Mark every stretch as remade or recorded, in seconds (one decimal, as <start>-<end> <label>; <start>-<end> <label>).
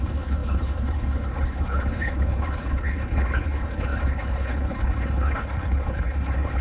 0.0-6.6 remade